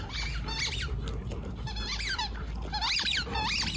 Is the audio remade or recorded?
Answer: recorded